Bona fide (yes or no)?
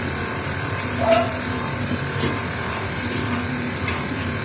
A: no